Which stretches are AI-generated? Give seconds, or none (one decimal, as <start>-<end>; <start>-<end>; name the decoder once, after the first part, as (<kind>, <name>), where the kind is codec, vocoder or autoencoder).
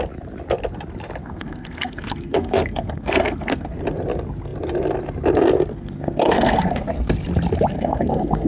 1.2-3.8 (codec, SNAC); 5.7-7.1; 7.7-8.5